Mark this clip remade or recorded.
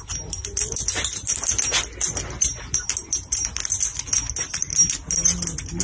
recorded